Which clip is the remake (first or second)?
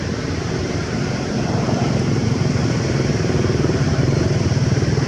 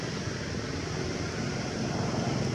first